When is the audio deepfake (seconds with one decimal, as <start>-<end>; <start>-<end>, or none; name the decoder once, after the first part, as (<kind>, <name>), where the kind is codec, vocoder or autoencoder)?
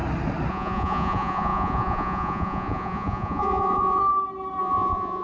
0.5-4.0 (vocoder, Vocos); 4.6-5.2